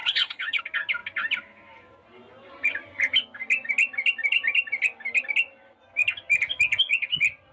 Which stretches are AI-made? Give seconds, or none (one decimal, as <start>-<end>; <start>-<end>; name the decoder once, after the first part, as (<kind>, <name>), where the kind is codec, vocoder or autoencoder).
0.0-0.6 (codec, HILCodec)